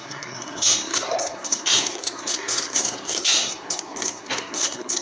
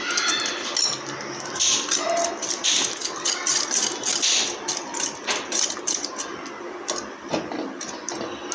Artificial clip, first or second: first